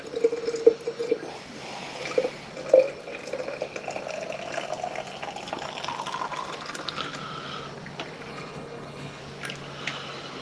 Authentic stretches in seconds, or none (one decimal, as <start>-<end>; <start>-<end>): 0.0-8.3; 9.2-10.4